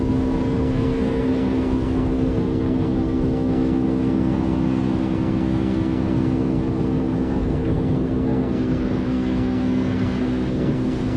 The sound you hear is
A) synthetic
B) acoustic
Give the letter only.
A